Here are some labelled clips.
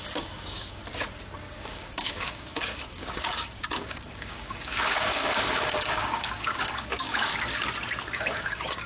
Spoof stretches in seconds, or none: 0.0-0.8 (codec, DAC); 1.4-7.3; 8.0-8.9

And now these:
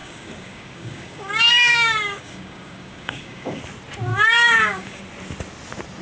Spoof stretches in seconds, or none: 0.0-3.6 (codec, DAC); 4.1-5.0

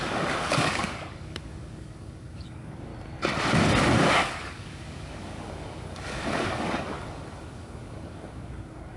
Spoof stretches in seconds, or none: 0.0-2.9 (codec, DAC); 4.1-9.0

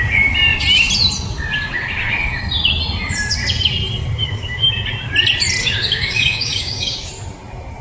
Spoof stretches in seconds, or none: 4.2-4.8 (codec, DAC); 5.6-7.1

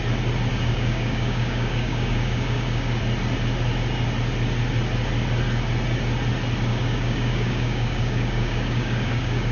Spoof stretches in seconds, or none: 0.5-3.0 (codec, DAC); 6.7-9.5

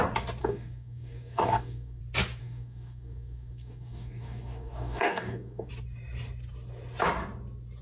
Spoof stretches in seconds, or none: 0.4-2.0 (codec, DAC); 2.4-5.7

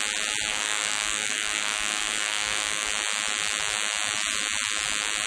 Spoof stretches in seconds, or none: 0.5-2.9 (codec, DAC)